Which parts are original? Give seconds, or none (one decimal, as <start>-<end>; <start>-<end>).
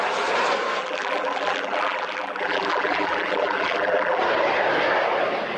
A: 0.0-0.8; 4.2-5.6